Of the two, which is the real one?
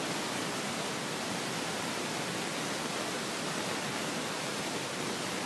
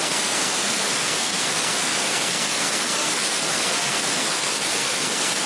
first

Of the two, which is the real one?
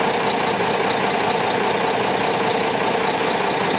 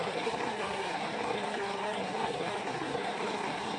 first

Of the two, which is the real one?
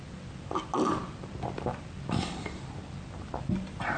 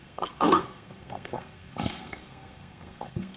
first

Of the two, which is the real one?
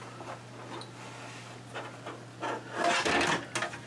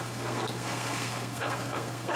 first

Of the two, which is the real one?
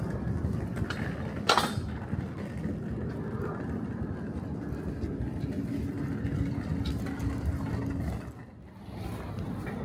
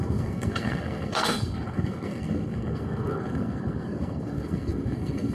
first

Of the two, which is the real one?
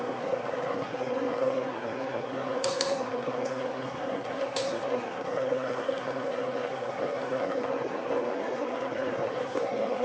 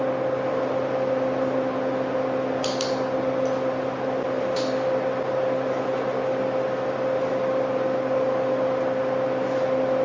second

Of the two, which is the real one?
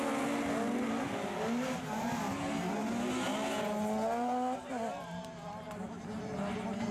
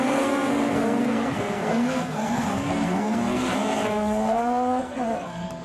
first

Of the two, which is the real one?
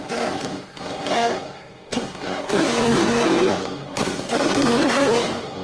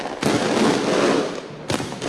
second